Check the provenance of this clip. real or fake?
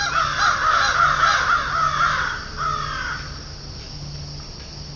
real